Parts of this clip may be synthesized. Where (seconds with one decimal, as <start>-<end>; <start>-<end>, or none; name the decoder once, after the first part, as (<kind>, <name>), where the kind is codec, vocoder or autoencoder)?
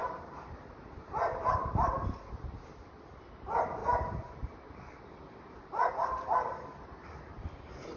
none